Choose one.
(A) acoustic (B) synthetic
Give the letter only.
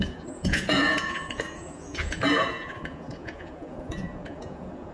B